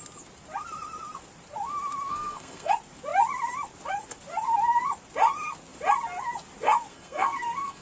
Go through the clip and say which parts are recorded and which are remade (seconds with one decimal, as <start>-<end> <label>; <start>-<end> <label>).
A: 0.0-2.1 recorded; 2.1-2.7 remade; 2.7-6.9 recorded; 6.9-7.8 remade